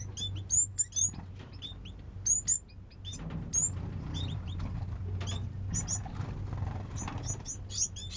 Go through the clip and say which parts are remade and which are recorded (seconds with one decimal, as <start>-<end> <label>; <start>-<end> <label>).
0.0-8.2 recorded